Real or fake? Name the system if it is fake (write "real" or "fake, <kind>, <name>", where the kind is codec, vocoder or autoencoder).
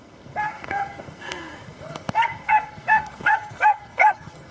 fake, codec, SNAC